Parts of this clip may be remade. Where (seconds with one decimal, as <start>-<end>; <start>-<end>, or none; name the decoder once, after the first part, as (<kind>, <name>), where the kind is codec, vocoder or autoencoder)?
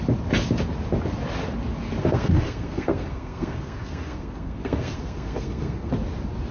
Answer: 2.0-5.9 (codec, SNAC)